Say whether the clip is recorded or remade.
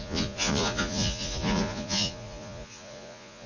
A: remade